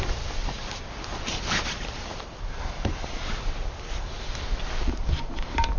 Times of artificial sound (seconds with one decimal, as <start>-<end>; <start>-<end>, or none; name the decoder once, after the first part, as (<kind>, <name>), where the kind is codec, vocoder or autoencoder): 1.1-4.6 (vocoder, BigVGAN v2)